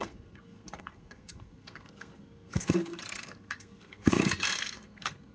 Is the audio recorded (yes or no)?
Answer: no